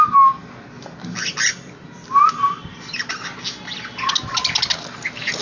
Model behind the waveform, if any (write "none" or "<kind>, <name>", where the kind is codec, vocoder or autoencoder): none